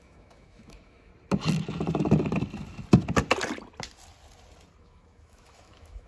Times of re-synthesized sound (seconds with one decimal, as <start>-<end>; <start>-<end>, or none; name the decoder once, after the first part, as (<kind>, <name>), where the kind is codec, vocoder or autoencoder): 0.0-1.1 (autoencoder, DAC-VAE); 4.8-6.1